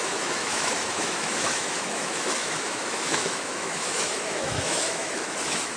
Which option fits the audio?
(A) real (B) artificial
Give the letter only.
B